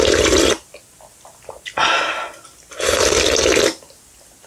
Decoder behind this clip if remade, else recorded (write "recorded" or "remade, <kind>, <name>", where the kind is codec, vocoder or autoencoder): recorded